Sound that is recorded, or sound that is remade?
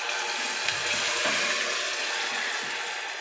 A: recorded